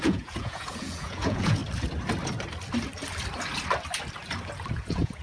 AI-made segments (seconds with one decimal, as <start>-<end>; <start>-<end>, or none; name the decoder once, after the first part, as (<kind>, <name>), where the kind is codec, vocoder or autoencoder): 0.0-1.6 (vocoder, Vocos); 4.7-5.2

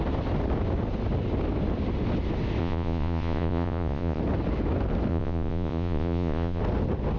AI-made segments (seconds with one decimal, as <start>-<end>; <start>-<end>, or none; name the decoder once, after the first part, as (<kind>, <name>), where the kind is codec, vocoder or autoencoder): 2.6-4.2 (vocoder, Vocos); 5.1-6.6

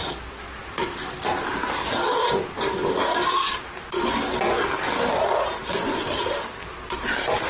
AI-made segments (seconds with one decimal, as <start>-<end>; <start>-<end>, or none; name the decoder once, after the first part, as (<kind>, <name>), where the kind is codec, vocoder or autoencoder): none

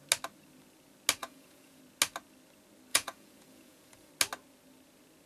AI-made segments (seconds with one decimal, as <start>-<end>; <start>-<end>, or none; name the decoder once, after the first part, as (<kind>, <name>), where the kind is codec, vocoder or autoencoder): 1.2-1.8 (vocoder, Vocos); 2.9-4.1

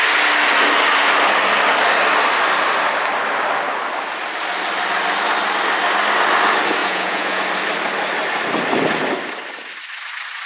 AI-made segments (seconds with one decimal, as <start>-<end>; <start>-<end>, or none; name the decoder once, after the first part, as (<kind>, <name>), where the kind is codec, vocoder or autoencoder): 6.8-7.4 (vocoder, Vocos)